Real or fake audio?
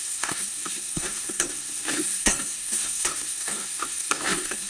fake